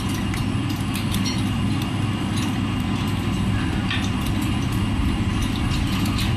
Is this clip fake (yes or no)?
no